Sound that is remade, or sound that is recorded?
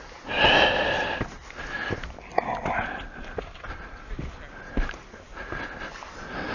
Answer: recorded